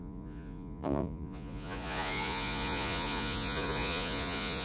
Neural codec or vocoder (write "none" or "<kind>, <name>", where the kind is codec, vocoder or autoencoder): vocoder, Vocos